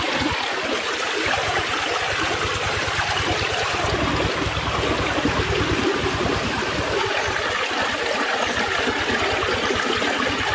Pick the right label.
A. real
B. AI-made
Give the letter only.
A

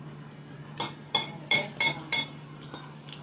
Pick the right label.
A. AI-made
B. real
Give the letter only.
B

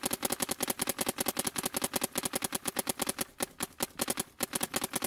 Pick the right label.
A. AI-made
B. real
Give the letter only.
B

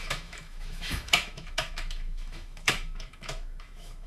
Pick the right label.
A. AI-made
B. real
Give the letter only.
A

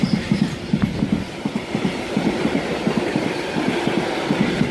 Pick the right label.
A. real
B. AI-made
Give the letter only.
A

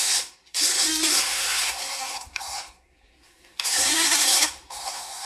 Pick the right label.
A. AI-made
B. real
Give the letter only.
A